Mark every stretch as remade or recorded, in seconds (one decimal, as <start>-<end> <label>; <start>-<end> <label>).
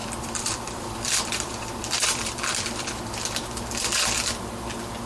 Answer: 0.0-3.0 remade; 3.0-5.1 recorded